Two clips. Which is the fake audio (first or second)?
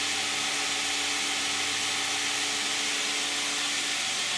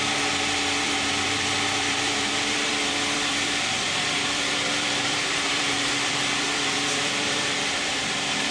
second